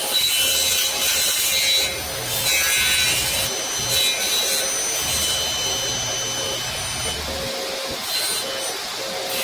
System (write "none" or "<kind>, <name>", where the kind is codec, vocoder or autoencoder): none